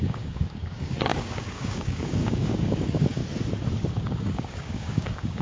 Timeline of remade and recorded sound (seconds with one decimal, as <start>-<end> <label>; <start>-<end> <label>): 0.0-3.2 remade; 3.2-4.0 recorded; 4.0-5.4 remade